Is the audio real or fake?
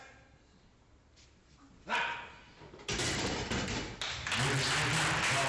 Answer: real